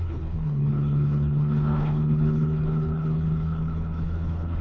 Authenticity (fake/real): fake